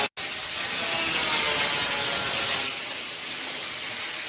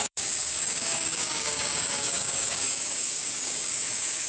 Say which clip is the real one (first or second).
first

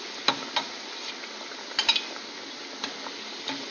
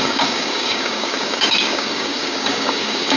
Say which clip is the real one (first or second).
first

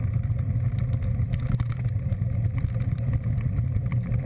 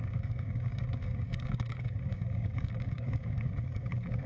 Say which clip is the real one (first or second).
first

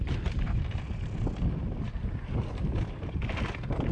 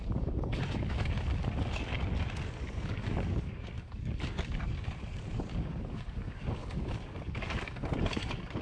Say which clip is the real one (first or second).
first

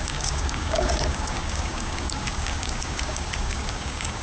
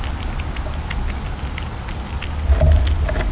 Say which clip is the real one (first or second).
second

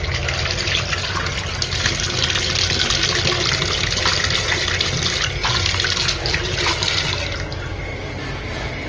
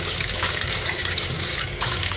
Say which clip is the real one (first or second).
first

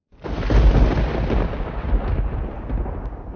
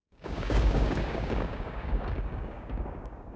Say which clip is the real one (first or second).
first